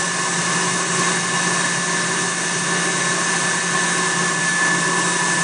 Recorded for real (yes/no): yes